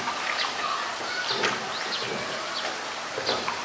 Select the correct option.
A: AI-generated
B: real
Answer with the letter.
B